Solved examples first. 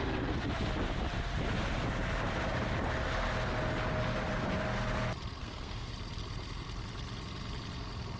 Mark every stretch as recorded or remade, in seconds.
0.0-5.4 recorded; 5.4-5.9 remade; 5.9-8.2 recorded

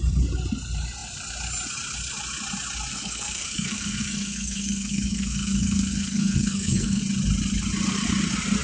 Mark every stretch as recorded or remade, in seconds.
0.0-2.9 recorded; 2.9-7.0 remade; 7.0-8.6 recorded

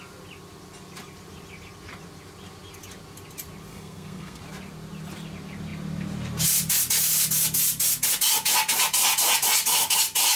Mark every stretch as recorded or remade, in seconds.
0.0-3.7 recorded; 3.7-4.4 remade; 4.4-10.4 recorded

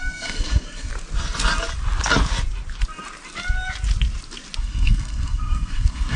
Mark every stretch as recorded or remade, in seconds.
0.0-0.9 remade; 0.9-4.6 recorded; 4.6-6.2 remade

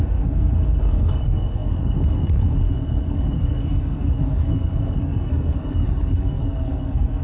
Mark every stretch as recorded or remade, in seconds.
0.0-7.2 remade

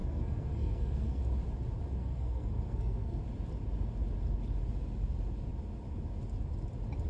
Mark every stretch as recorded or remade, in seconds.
0.0-1.2 remade; 1.2-2.0 recorded; 2.0-3.2 remade; 3.2-7.1 recorded

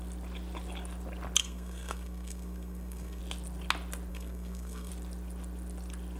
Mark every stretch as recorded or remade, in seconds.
0.0-1.4 recorded; 1.4-3.2 remade; 3.2-4.1 recorded; 4.1-4.9 remade; 4.9-6.2 recorded

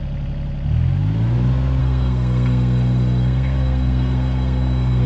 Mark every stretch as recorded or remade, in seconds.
0.0-1.8 recorded; 1.8-5.1 remade